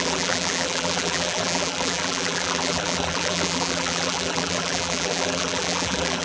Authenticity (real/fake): fake